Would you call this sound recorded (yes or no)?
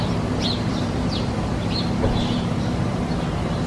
no